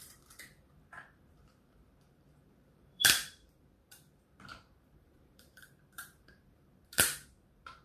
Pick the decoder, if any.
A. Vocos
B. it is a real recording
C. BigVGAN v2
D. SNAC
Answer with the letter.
C